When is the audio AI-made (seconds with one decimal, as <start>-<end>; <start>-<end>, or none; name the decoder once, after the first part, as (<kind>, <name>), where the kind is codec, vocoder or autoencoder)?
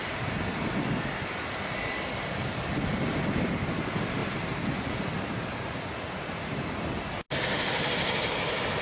none